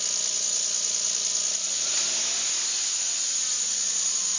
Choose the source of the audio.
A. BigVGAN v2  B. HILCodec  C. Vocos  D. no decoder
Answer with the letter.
D